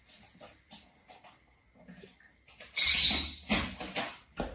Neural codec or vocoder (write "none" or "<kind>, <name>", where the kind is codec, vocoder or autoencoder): none